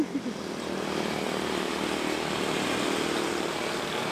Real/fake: real